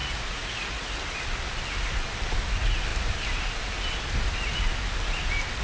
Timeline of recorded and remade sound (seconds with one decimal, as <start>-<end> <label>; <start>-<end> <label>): 0.0-0.9 remade; 0.9-5.6 recorded